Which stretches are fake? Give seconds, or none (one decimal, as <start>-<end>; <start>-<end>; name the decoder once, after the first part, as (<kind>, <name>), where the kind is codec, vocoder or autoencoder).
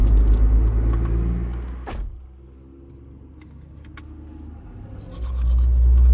none